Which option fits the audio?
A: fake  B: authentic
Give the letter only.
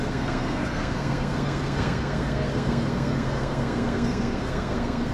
A